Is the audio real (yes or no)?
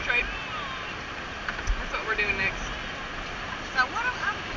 yes